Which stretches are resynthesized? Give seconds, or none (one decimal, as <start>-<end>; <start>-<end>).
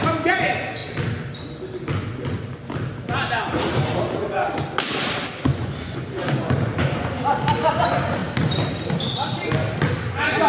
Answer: 5.5-6.5